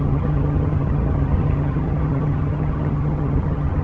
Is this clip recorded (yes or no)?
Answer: no